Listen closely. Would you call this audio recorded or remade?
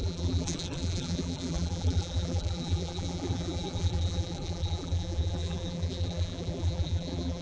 remade